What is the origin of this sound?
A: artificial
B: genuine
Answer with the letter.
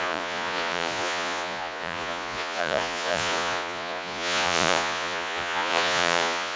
A